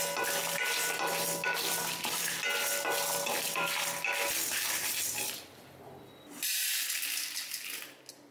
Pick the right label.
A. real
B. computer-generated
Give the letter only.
A